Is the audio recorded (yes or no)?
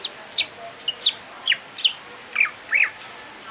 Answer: yes